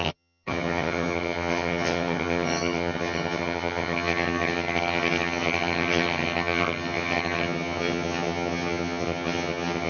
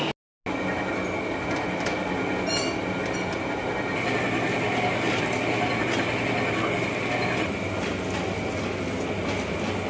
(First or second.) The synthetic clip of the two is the first